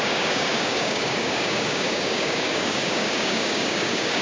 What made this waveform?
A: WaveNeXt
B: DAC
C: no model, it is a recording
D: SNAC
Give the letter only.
B